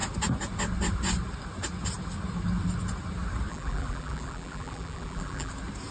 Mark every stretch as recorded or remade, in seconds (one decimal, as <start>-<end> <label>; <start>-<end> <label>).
0.0-3.5 recorded; 3.5-5.5 remade; 5.5-5.9 recorded

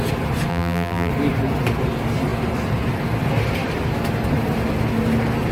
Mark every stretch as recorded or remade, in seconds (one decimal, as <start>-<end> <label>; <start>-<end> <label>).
0.0-0.5 recorded; 0.5-1.1 remade; 1.1-5.5 recorded

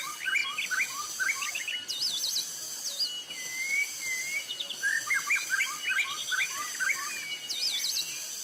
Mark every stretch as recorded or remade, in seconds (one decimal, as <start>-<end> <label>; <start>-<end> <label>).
0.0-8.4 recorded

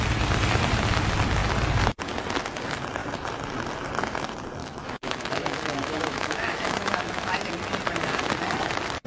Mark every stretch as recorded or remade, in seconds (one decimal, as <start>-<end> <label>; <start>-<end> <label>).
0.0-4.6 recorded; 4.6-7.3 remade; 7.3-9.1 recorded

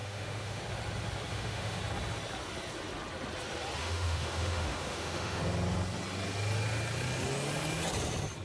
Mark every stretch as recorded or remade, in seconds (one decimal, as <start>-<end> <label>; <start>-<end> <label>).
0.0-0.6 remade; 0.6-1.3 recorded; 1.3-1.8 remade; 1.8-3.8 recorded; 3.8-5.4 remade; 5.4-8.4 recorded

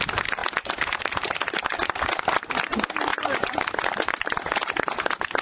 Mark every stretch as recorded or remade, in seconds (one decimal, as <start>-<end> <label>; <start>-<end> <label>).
0.0-3.1 recorded; 3.1-4.3 remade; 4.3-5.4 recorded

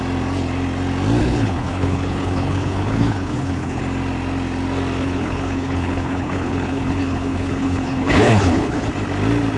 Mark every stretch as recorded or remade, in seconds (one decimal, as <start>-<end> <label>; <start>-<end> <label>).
0.0-1.2 recorded; 1.2-3.8 remade; 3.8-5.0 recorded; 5.0-8.9 remade; 8.9-9.6 recorded

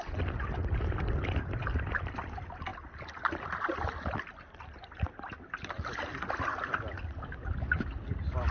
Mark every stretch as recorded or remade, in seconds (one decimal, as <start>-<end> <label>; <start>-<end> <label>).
0.0-8.5 recorded